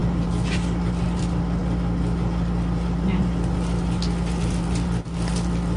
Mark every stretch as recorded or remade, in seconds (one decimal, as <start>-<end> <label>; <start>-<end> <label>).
0.0-5.8 recorded